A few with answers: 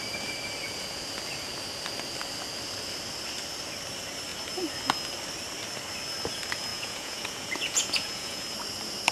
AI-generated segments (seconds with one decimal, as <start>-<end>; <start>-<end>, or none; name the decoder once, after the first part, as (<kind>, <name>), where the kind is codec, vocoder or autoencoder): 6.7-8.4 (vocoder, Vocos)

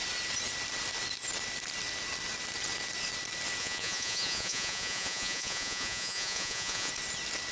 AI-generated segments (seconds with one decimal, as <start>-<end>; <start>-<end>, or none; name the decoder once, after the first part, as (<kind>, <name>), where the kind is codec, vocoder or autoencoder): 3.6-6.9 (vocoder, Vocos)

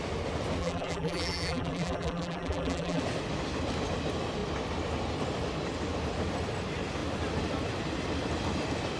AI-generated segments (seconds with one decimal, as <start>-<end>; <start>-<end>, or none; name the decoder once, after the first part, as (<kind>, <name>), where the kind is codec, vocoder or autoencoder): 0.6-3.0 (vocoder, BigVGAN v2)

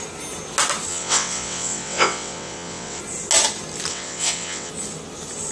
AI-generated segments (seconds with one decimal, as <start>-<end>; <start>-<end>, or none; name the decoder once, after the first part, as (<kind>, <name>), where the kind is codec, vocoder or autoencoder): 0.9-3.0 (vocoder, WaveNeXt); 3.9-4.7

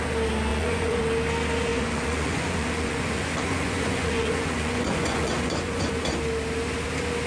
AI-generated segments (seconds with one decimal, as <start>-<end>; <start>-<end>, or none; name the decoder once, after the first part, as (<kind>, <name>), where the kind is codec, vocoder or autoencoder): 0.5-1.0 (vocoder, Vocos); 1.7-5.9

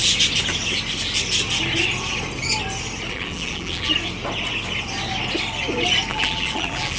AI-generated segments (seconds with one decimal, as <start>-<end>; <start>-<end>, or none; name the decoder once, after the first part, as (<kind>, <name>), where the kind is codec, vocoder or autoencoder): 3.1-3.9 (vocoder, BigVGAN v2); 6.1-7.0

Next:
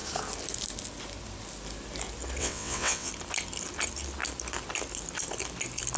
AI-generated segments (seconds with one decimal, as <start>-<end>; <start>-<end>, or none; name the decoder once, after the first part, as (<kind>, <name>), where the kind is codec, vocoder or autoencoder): 2.4-3.1 (vocoder, WaveNeXt)

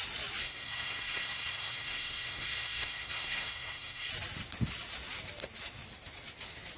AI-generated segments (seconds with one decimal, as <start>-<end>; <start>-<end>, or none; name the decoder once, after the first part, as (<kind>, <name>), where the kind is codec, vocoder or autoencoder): 0.4-4.1 (codec, SNAC)